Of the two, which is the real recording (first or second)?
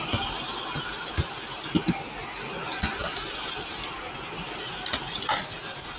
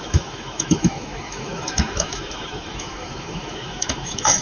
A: first